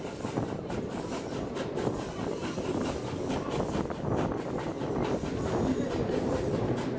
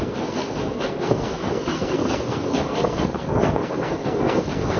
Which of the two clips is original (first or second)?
first